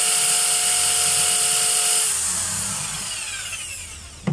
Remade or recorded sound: recorded